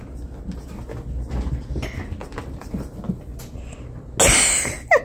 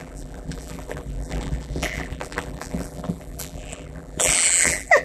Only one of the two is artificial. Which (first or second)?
second